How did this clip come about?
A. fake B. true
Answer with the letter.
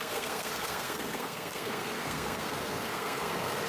A